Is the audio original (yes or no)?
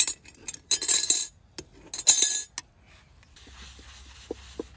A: yes